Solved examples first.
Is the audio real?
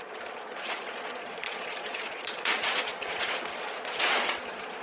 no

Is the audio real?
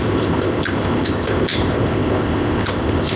no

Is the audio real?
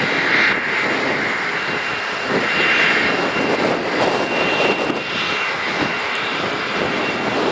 yes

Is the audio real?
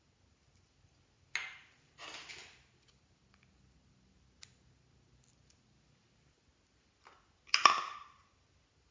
yes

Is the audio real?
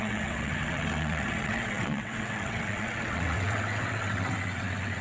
no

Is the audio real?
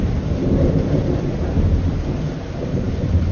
no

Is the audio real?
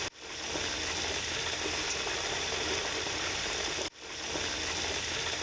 yes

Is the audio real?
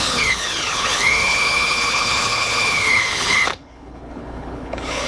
no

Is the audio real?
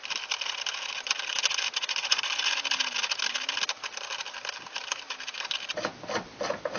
yes